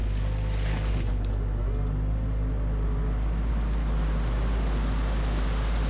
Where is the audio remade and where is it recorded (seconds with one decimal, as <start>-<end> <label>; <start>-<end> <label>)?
0.0-5.9 recorded